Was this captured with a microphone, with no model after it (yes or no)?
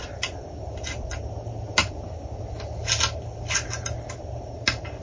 yes